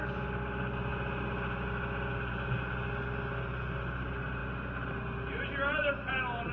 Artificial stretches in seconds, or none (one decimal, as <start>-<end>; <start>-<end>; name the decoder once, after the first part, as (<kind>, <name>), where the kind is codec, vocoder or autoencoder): none